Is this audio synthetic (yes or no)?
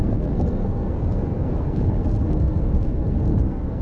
yes